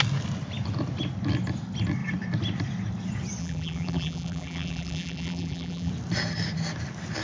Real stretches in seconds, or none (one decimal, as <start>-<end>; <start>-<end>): 0.0-3.4; 5.9-7.2

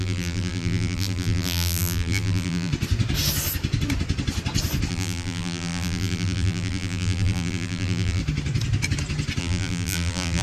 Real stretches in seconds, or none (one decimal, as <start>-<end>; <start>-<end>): 2.7-4.9; 8.2-9.4